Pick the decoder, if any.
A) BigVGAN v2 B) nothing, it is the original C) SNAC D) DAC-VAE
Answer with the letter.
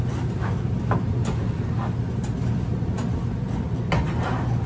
B